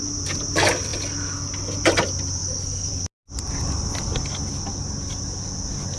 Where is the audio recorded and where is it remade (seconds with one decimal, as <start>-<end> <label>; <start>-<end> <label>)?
0.0-2.4 recorded; 2.4-2.9 remade; 2.9-6.0 recorded